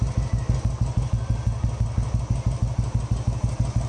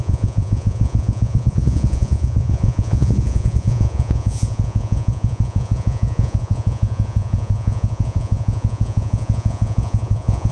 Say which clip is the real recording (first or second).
first